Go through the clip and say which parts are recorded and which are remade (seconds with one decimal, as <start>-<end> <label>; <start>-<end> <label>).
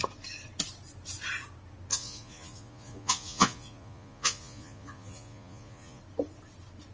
0.0-1.9 recorded; 1.9-6.0 remade; 6.0-6.9 recorded